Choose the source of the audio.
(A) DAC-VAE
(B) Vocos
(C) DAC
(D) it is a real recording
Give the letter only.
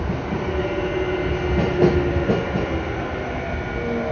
D